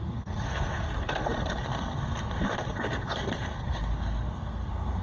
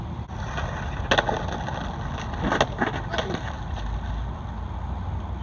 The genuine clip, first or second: second